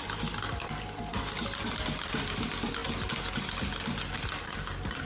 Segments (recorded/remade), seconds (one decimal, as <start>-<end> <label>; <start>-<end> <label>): 0.0-5.1 recorded